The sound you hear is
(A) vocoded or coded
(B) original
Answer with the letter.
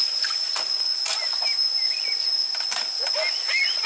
B